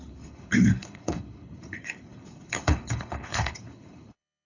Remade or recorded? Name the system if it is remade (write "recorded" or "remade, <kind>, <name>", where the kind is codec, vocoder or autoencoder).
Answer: remade, codec, HILCodec